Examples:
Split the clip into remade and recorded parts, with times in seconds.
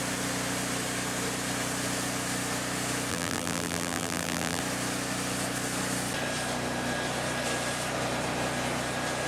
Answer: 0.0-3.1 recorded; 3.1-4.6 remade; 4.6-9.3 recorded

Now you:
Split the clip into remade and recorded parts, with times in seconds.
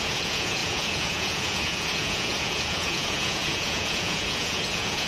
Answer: 0.0-5.1 remade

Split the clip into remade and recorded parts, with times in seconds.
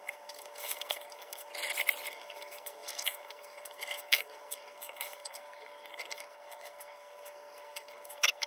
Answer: 0.0-1.5 remade; 1.5-2.1 recorded; 2.1-8.5 remade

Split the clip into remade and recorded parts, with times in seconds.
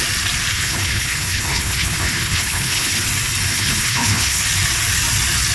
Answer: 0.0-0.5 recorded; 0.5-3.0 remade; 3.0-3.5 recorded; 3.5-4.4 remade; 4.4-5.5 recorded